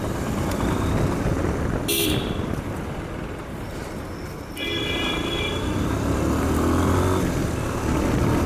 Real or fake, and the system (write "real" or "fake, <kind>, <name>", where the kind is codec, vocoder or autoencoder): real